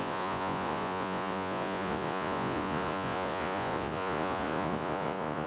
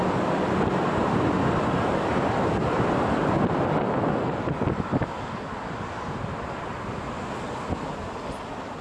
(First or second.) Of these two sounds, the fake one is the first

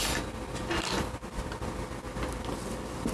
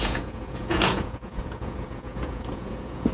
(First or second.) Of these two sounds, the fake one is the second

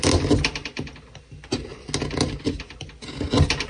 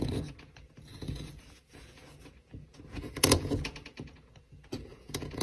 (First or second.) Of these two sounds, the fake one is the second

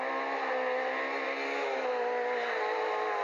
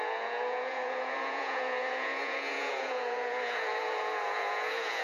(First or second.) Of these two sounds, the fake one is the second